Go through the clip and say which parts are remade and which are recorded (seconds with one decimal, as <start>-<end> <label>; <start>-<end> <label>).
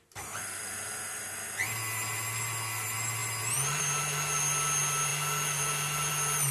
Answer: 0.0-6.5 recorded